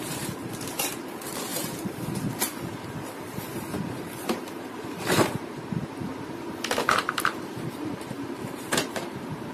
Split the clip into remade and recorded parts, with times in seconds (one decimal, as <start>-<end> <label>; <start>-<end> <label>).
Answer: 0.0-6.1 remade; 6.1-6.9 recorded; 6.9-9.5 remade